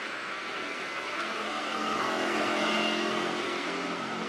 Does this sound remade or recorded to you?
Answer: remade